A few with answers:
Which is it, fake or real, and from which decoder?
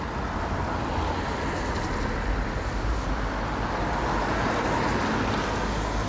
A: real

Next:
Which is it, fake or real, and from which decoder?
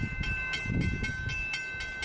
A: real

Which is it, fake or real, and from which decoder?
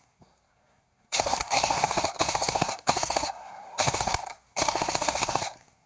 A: fake, codec, SNAC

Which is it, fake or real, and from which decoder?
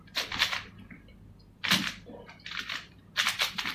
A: real